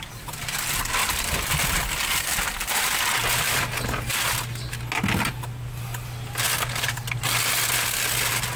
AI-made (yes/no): no